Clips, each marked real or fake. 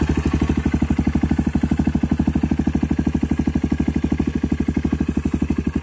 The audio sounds real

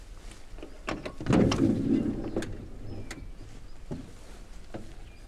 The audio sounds real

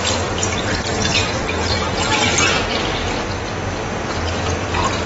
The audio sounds real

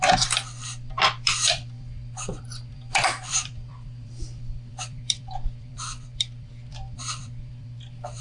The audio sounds fake